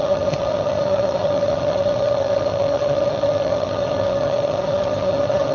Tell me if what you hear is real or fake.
fake